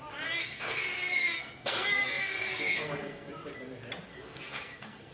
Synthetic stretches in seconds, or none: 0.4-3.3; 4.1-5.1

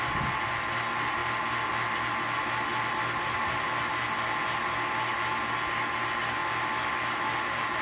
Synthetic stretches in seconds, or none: none

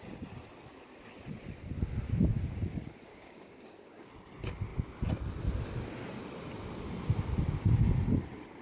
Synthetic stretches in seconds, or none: 3.1-4.1